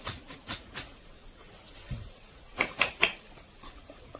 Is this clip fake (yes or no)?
yes